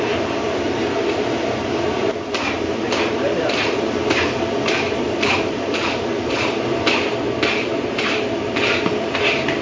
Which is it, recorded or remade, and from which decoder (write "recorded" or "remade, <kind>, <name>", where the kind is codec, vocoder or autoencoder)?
remade, vocoder, BigVGAN v2